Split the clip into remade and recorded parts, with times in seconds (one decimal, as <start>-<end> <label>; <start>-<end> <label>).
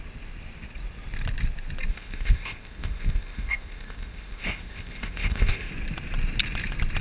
0.0-1.9 recorded; 1.9-5.7 remade; 5.7-7.0 recorded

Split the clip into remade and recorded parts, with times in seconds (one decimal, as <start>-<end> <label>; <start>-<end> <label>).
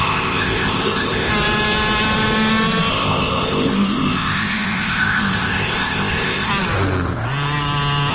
0.0-1.3 remade; 1.3-2.9 recorded; 2.9-6.5 remade; 6.5-8.1 recorded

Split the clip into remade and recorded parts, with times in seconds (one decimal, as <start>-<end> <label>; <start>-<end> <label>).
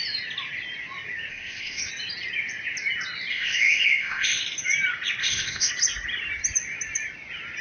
0.0-1.3 recorded; 1.3-1.9 remade; 1.9-3.3 recorded; 3.3-4.4 remade; 4.4-5.2 recorded; 5.2-5.7 remade; 5.7-7.6 recorded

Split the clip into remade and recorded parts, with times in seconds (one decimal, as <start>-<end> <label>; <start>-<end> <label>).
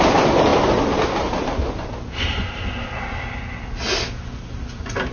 0.0-5.1 recorded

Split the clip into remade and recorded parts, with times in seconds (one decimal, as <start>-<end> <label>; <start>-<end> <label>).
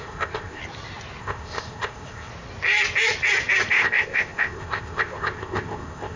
0.0-0.6 remade; 0.6-1.2 recorded; 1.2-2.3 remade; 2.3-3.7 recorded; 3.7-6.2 remade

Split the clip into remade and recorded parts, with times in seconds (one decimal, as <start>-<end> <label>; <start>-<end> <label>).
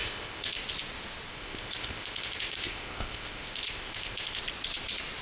0.0-0.6 remade; 0.6-1.3 recorded; 1.3-4.4 remade; 4.4-5.2 recorded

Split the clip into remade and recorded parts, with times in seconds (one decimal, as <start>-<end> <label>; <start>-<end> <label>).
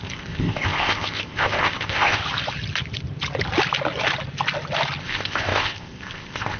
0.0-2.2 remade; 2.2-5.0 recorded; 5.0-6.6 remade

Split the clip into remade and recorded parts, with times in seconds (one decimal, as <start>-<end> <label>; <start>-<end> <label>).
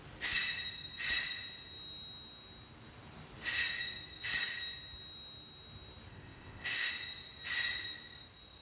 0.0-6.1 recorded; 6.1-6.9 remade; 6.9-8.6 recorded